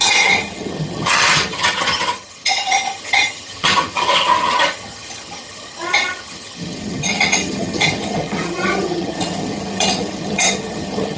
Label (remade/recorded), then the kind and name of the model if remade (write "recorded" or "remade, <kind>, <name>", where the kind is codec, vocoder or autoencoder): remade, vocoder, HiFi-GAN